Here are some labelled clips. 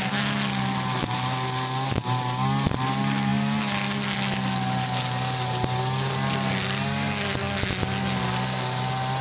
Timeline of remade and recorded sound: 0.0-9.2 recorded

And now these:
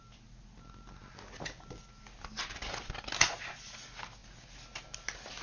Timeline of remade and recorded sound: 0.0-5.4 recorded

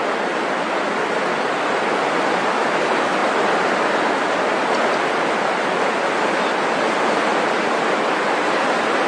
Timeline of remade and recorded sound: 0.0-9.1 recorded